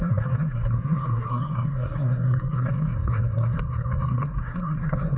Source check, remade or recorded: remade